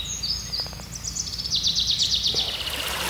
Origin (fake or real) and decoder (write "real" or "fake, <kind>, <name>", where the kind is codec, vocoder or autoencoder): real